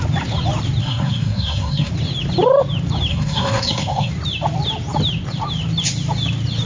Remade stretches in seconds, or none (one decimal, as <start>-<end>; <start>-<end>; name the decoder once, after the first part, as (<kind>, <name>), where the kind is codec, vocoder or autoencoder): 0.8-1.9 (codec, SNAC); 3.1-4.1